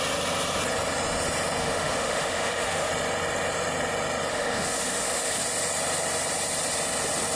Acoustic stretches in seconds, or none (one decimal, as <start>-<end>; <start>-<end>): 0.0-1.6; 2.9-4.3; 5.4-7.4